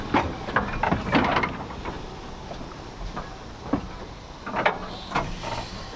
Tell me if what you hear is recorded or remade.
recorded